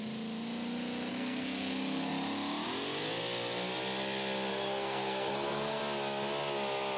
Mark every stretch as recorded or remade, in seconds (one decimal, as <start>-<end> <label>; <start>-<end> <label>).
0.0-1.1 recorded; 1.1-2.1 remade; 2.1-4.5 recorded; 4.5-5.8 remade; 5.8-7.0 recorded